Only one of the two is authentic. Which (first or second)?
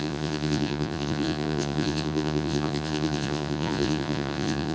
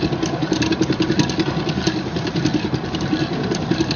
second